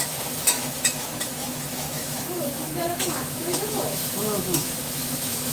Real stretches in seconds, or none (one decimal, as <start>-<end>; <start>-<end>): none